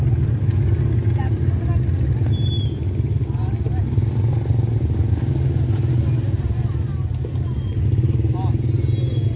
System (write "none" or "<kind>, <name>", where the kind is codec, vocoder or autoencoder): none